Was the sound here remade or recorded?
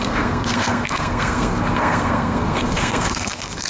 remade